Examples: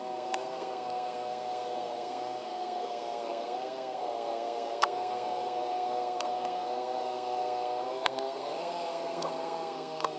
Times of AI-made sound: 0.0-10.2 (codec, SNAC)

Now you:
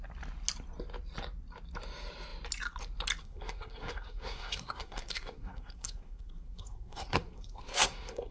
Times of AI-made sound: 3.2-8.3 (codec, SNAC)

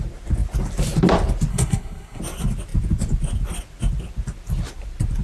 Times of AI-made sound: 1.5-2.2 (codec, SNAC)

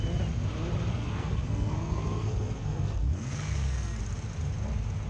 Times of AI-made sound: 0.9-4.0 (codec, SNAC)

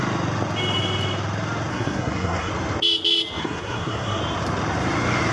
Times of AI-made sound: 1.7-2.5 (codec, SNAC); 3.4-4.2